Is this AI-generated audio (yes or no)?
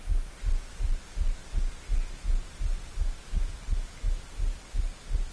no